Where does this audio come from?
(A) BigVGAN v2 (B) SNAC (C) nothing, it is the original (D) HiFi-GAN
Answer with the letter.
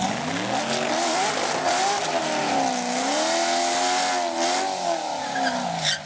C